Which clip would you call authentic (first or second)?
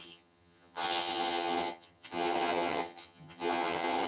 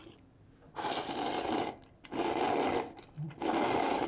second